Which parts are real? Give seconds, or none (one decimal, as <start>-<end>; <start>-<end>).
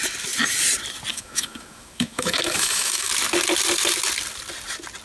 0.0-1.1; 3.1-5.0